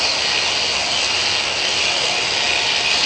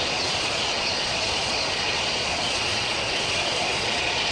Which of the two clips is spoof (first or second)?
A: second